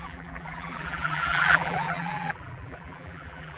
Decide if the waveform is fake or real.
fake